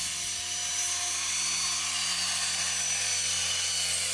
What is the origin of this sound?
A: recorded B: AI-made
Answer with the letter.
A